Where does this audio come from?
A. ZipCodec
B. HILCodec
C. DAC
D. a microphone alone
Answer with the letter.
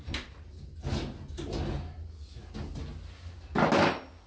D